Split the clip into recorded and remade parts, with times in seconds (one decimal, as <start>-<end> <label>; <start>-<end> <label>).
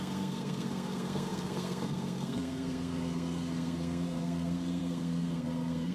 0.0-5.9 remade